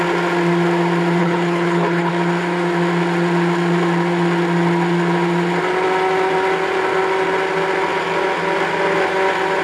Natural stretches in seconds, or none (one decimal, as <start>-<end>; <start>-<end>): 0.0-1.2; 2.1-9.6